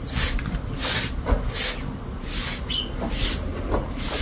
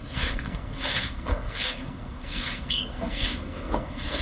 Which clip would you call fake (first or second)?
second